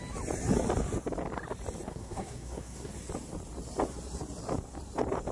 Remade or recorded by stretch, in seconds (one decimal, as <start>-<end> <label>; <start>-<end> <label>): 0.0-1.9 recorded; 1.9-2.9 remade; 2.9-5.3 recorded